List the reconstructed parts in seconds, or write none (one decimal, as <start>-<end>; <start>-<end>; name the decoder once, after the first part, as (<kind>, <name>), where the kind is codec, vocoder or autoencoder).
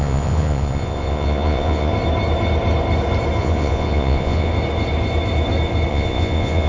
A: 0.0-1.9 (vocoder, Vocos); 3.4-4.5; 5.9-6.7